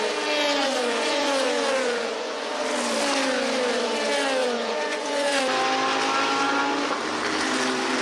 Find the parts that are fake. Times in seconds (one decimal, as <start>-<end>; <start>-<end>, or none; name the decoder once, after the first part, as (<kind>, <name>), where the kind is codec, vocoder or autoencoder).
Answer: 0.6-2.5 (vocoder, Vocos); 4.4-5.4